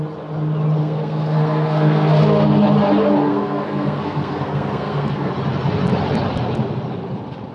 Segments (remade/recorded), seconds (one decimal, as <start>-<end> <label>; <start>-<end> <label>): 0.0-0.8 recorded; 0.8-2.5 remade; 2.5-3.3 recorded; 3.3-5.3 remade; 5.3-7.5 recorded